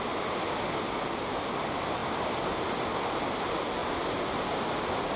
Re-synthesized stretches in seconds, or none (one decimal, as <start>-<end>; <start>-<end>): none